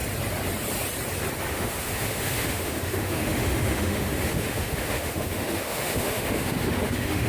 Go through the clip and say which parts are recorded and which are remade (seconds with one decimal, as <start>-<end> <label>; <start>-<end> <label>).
0.0-1.5 recorded; 1.5-7.3 remade